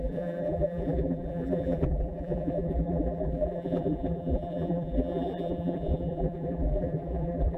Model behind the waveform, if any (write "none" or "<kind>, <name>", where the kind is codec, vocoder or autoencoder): vocoder, BigVGAN v2